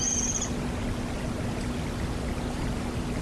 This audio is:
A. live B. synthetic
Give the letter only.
A